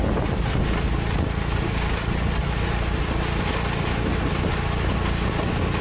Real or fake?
real